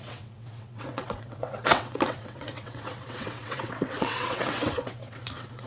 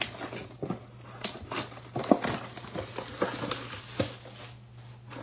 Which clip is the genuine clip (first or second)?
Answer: second